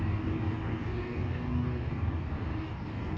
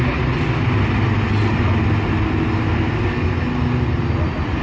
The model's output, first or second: first